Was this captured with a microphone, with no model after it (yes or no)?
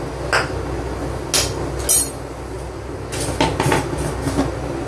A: yes